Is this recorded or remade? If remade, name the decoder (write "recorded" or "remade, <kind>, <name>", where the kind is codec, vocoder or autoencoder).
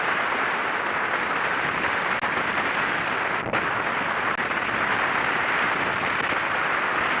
recorded